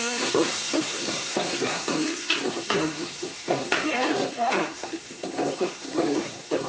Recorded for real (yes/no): no